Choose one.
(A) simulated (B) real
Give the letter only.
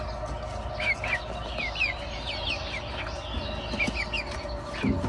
B